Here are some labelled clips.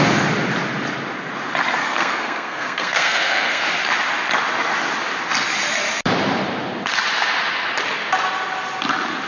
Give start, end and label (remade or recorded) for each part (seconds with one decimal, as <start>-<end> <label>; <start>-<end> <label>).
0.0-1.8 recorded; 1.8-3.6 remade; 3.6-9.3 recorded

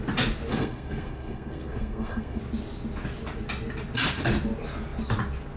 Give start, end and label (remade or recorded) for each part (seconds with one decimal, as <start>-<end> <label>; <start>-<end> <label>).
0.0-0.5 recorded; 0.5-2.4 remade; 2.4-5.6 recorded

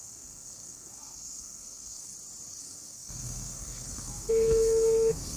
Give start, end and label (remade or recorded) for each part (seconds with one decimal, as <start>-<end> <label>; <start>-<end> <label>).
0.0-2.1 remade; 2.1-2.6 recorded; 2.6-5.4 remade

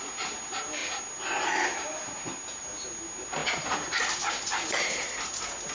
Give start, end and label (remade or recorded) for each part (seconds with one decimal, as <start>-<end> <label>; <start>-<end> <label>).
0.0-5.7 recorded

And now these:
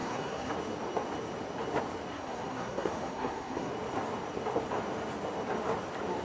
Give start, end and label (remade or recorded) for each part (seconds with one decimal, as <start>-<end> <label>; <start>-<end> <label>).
0.0-0.5 remade; 0.5-2.1 recorded; 2.1-3.7 remade; 3.7-6.2 recorded

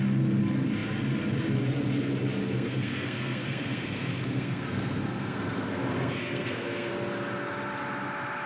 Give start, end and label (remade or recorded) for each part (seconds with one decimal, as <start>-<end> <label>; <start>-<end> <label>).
0.0-2.4 recorded; 2.4-6.9 remade; 6.9-8.5 recorded

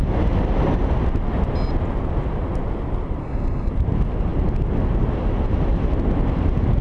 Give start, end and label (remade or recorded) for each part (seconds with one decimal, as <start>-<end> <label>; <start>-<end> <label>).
0.0-3.2 recorded; 3.2-3.7 remade; 3.7-6.8 recorded